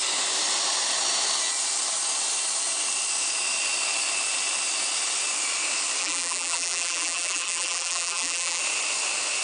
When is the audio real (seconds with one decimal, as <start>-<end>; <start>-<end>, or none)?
0.0-6.0; 8.6-9.4